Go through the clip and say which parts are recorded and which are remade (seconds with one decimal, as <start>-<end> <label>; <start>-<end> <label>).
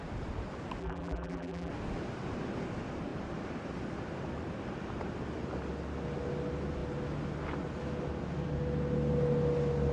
0.0-0.8 recorded; 0.8-1.7 remade; 1.7-9.9 recorded